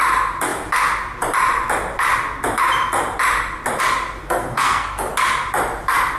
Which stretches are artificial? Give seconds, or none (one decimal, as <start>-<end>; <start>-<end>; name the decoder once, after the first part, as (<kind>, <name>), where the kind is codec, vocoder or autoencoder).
4.2-5.1 (codec, SNAC)